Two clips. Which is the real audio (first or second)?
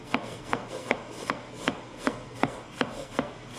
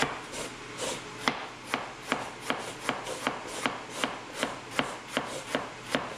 second